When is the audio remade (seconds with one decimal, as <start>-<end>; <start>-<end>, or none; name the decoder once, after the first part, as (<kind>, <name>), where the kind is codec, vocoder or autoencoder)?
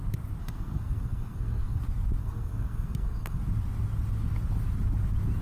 0.4-1.8 (codec, SNAC); 2.2-3.4